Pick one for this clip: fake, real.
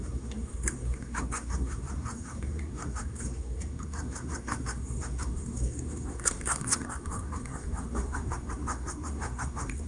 fake